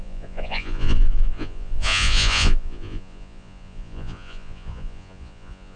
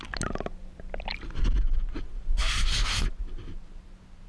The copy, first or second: first